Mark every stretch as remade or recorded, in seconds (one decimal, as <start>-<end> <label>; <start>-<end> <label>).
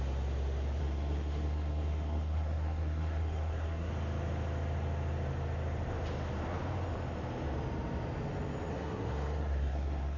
0.0-0.8 recorded; 0.8-3.9 remade; 3.9-8.7 recorded; 8.7-10.2 remade